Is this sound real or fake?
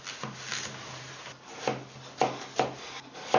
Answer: real